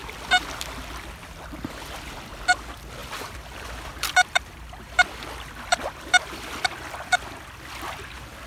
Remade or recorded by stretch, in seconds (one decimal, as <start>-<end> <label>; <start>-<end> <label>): 0.0-3.0 recorded; 3.0-7.4 remade; 7.4-8.5 recorded